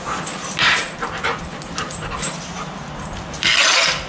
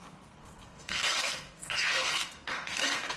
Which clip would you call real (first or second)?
first